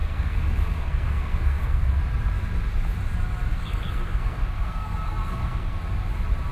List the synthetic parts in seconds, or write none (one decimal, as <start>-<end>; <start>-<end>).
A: 0.0-2.0; 3.5-5.8